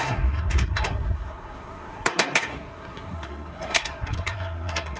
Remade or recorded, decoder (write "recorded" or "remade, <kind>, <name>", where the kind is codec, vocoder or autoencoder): remade, codec, SNAC